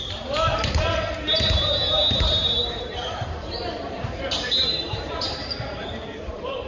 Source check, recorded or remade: remade